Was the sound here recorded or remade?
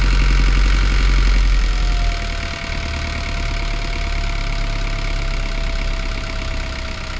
recorded